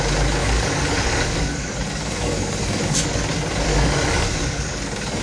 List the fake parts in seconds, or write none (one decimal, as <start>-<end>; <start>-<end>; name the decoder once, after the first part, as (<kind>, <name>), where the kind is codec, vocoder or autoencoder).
0.4-3.3 (codec, DAC); 3.7-5.2